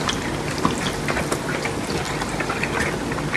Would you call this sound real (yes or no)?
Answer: yes